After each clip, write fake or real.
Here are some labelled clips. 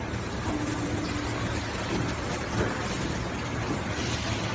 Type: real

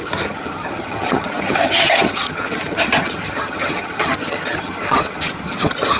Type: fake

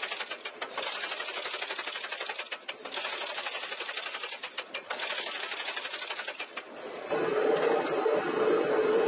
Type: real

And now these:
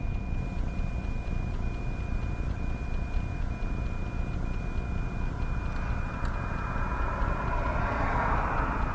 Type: real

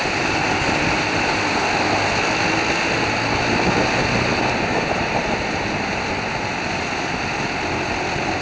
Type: real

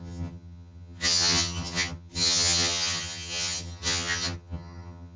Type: fake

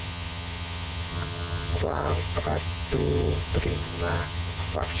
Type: fake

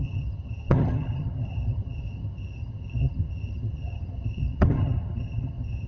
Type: fake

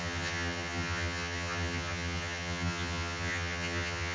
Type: fake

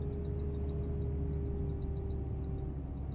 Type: real